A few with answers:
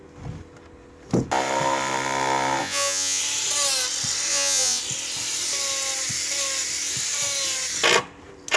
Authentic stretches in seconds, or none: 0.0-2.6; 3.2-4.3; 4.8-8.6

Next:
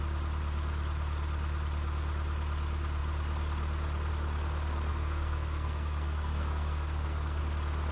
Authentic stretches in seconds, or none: 0.0-4.9; 7.4-7.9

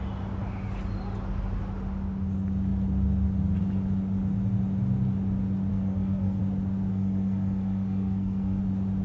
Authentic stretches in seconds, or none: 0.0-5.7; 6.4-6.9; 8.6-9.0

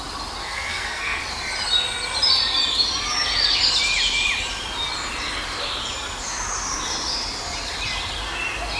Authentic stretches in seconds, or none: 0.0-0.4; 1.2-8.8